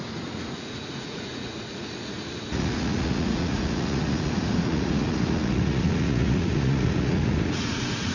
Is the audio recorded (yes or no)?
no